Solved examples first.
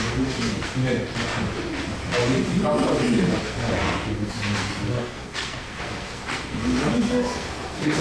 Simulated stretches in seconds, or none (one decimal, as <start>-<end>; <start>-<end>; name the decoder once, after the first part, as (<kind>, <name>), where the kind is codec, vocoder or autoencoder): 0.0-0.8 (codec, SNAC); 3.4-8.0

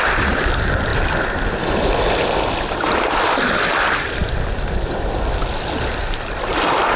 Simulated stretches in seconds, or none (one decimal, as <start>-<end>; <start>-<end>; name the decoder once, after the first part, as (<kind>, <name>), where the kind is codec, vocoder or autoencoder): none

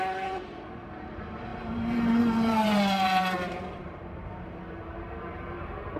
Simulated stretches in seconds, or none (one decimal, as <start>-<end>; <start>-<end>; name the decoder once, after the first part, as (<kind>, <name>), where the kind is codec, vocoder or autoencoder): 0.0-6.0 (vocoder, BigVGAN v2)